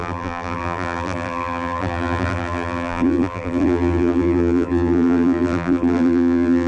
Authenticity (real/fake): fake